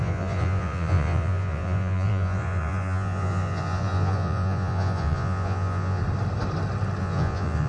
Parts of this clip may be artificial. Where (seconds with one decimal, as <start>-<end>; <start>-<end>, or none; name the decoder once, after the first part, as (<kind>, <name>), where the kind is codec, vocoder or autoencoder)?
0.0-6.0 (vocoder, Vocos); 7.0-7.7